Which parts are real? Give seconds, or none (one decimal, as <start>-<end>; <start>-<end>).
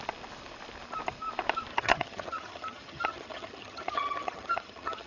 0.0-1.7